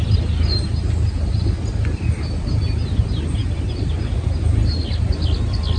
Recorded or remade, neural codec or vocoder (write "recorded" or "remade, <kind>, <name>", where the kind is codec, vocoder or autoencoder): recorded